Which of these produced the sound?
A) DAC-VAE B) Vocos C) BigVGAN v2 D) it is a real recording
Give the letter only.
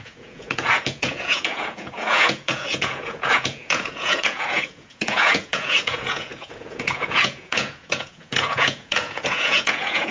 B